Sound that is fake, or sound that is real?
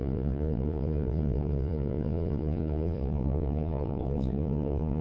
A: fake